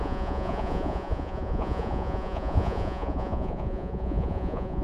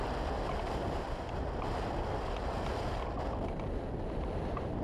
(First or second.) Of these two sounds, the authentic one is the second